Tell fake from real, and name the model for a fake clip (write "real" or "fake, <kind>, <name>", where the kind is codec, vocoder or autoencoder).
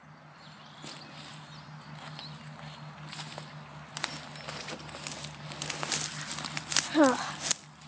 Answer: real